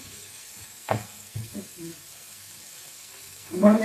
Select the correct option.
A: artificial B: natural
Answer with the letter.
A